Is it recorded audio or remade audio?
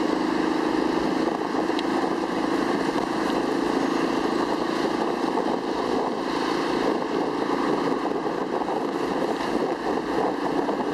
recorded